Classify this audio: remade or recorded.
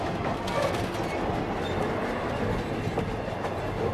recorded